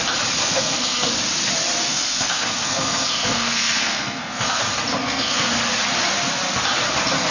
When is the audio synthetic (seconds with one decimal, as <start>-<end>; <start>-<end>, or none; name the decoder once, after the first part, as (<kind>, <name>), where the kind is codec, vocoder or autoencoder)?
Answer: 0.4-1.1 (codec, SNAC); 1.8-4.6; 5.0-5.5